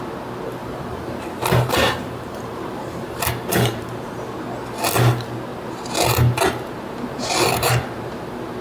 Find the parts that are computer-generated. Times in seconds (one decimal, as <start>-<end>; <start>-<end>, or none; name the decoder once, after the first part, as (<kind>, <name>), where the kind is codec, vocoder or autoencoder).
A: 0.6-4.1 (vocoder, BigVGAN v2)